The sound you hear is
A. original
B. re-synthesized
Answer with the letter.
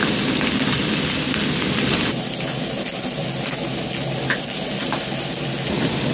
A